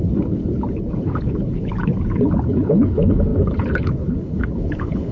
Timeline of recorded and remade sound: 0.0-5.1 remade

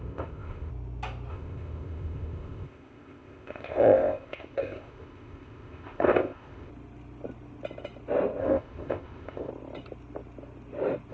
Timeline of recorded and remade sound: 0.0-0.7 remade; 0.7-1.3 recorded; 1.3-6.7 remade; 6.7-8.4 recorded; 8.4-9.5 remade; 9.5-11.1 recorded

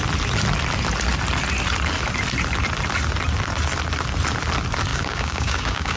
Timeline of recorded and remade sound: 0.0-4.9 recorded; 4.9-6.0 remade